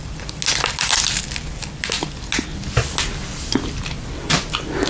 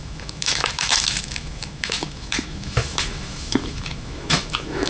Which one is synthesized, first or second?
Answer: second